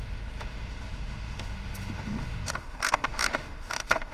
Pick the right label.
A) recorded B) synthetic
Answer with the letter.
B